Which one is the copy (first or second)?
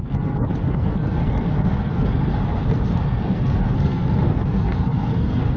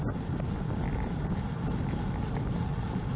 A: first